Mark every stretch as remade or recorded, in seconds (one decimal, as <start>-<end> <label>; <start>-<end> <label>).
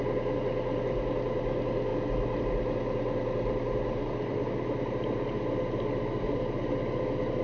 0.0-7.4 recorded